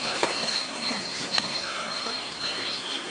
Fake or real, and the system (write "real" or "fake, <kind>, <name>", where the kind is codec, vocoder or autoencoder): fake, codec, SNAC